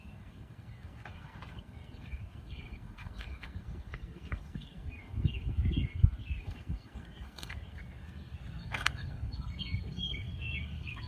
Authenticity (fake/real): fake